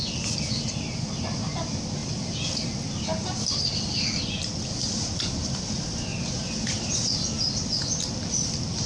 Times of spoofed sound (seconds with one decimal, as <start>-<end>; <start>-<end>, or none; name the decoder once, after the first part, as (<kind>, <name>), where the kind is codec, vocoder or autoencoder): none